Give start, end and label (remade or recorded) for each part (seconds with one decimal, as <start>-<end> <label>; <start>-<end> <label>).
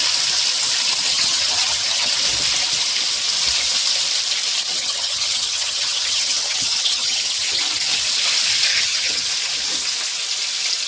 0.0-1.1 recorded; 1.1-2.1 remade; 2.1-4.7 recorded; 4.7-7.6 remade; 7.6-8.7 recorded; 8.7-9.3 remade; 9.3-10.9 recorded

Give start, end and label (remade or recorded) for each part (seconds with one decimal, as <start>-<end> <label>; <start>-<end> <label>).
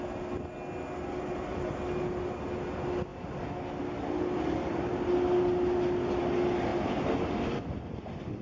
0.0-8.4 recorded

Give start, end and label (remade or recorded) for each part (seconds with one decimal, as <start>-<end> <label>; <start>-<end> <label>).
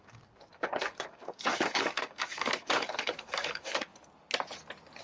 0.0-3.9 remade; 3.9-5.0 recorded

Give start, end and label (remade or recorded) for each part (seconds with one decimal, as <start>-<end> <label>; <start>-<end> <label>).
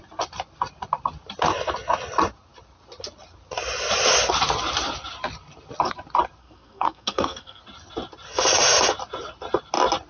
0.0-6.4 recorded; 6.4-7.6 remade; 7.6-10.1 recorded